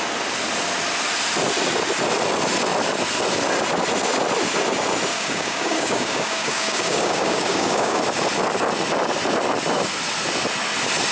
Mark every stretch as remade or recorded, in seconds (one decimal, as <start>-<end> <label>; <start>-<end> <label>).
0.0-5.1 recorded; 5.1-8.0 remade; 8.0-11.1 recorded